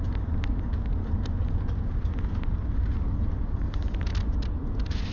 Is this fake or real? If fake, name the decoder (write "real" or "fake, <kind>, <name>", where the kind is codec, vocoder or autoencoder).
real